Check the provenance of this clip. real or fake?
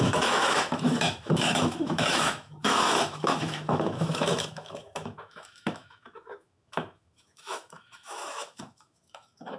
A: fake